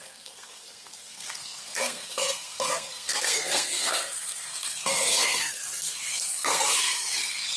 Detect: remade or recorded remade